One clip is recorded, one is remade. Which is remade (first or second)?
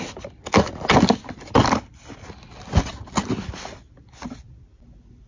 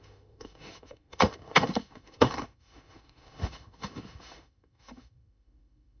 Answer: second